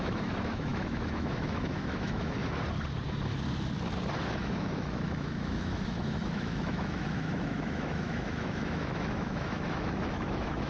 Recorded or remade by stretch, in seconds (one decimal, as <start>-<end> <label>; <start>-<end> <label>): 0.0-2.4 remade; 2.4-4.2 recorded; 4.2-10.7 remade